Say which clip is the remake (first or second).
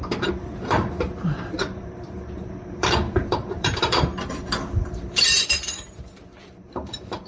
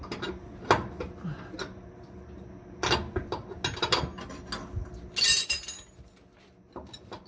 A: first